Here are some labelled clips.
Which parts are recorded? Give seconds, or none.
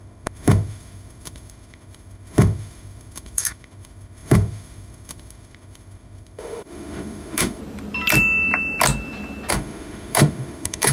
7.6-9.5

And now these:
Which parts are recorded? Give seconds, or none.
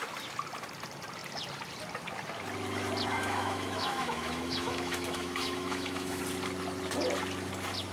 0.0-3.1; 6.2-7.9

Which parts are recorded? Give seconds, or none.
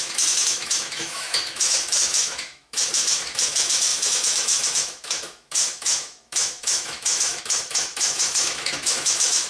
none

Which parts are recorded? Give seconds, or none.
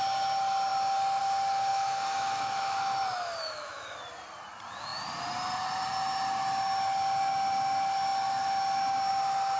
0.0-1.7; 4.0-9.6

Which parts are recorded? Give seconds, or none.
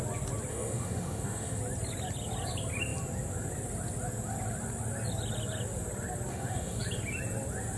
0.0-0.5; 1.6-6.3; 6.8-7.8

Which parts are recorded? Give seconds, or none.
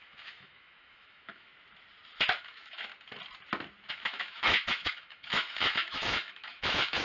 1.5-2.4; 2.9-3.9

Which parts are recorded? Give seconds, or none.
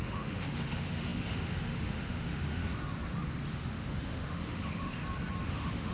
2.6-3.5; 5.0-5.5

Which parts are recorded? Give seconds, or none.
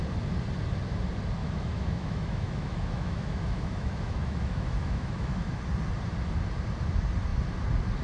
0.0-1.4; 5.6-8.0